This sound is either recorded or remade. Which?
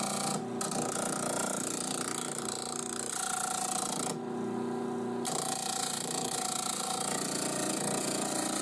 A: recorded